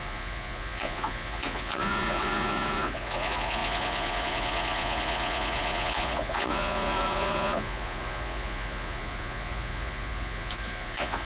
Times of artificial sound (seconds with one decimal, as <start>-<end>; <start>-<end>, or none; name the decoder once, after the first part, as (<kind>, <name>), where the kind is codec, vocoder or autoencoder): 0.0-11.2 (vocoder, Vocos)